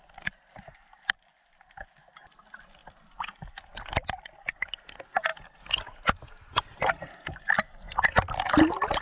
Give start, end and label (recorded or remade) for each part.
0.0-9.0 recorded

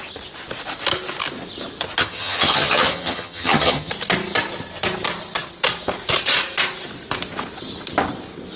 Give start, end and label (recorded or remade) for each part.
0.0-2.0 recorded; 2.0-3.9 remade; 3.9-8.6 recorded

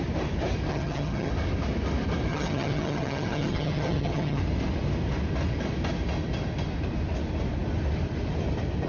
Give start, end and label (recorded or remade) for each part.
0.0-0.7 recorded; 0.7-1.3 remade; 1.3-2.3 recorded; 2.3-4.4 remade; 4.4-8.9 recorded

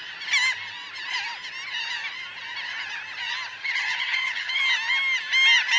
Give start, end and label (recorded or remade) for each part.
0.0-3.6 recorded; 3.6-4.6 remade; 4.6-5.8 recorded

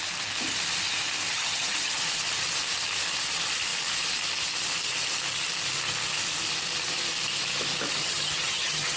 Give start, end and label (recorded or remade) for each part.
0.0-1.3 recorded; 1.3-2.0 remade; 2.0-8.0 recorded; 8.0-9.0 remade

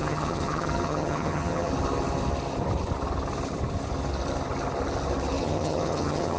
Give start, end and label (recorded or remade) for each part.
0.0-1.7 remade; 1.7-5.4 recorded; 5.4-6.4 remade